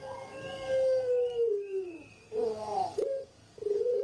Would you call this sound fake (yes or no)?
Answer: yes